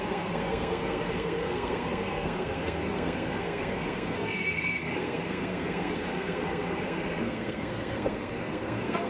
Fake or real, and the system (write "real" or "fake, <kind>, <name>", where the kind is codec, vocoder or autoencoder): fake, codec, SNAC